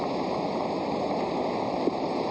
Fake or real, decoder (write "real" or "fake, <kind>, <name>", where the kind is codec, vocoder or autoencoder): real